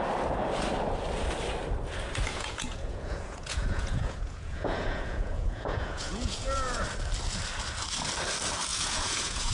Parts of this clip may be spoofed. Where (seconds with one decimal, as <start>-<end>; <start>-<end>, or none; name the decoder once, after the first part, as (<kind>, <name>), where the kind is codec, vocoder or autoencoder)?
2.3-6.8 (vocoder, Vocos); 8.7-9.5